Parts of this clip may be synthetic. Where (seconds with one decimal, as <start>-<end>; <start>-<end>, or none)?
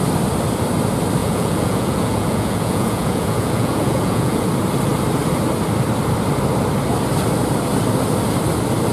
1.2-4.5